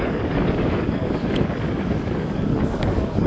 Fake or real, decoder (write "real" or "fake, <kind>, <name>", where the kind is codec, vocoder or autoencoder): fake, codec, DAC